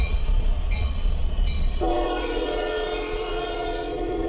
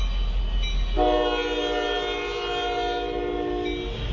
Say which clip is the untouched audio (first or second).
second